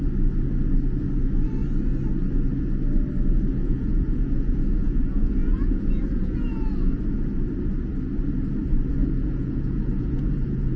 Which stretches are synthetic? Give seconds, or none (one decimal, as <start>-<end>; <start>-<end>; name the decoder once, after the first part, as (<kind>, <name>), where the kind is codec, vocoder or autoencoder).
3.5-7.0 (vocoder, Vocos); 9.0-10.8